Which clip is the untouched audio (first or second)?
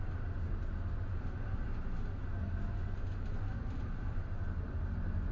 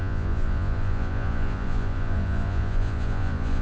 first